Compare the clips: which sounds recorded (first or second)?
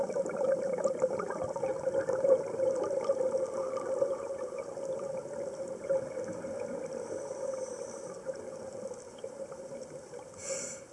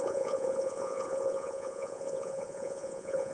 first